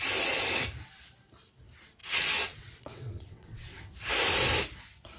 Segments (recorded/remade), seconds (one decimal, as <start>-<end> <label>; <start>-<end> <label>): 0.0-2.0 recorded; 2.0-3.8 remade; 3.8-5.2 recorded